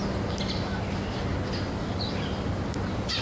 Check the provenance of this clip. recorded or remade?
recorded